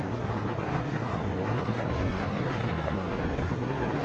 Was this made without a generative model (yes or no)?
no